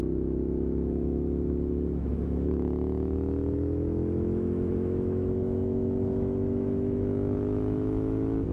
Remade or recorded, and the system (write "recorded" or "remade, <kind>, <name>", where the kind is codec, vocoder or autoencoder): remade, autoencoder, DAC-VAE